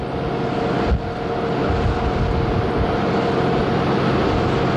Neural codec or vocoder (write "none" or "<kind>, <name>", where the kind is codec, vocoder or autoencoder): none